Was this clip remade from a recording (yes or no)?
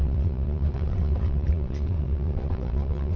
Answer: yes